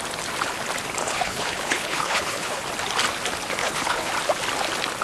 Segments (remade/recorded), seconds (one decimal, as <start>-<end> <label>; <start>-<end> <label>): 0.0-1.0 recorded; 1.0-2.6 remade; 2.6-3.6 recorded; 3.6-4.1 remade; 4.1-5.0 recorded